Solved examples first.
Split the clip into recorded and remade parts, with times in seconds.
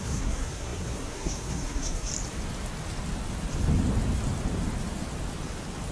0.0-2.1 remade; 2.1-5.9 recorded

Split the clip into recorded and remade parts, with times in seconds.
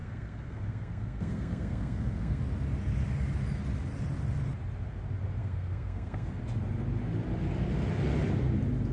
0.0-2.4 remade; 2.4-5.4 recorded; 5.4-6.4 remade; 6.4-8.9 recorded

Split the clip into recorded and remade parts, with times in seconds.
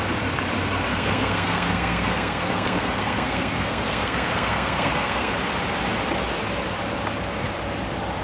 0.0-0.9 recorded; 0.9-5.3 remade; 5.3-8.2 recorded